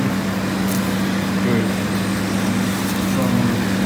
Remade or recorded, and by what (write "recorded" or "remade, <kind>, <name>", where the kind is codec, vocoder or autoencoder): recorded